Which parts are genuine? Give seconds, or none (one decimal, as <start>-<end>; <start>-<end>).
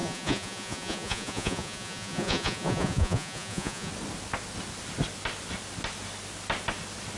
3.9-7.2